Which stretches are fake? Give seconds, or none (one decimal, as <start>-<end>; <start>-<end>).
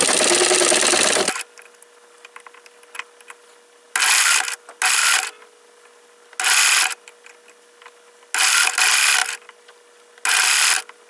none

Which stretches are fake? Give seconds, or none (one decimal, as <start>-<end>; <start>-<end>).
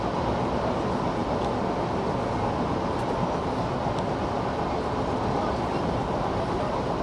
none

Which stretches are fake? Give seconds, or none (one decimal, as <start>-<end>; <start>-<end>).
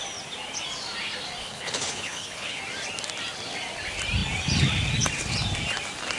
1.4-2.6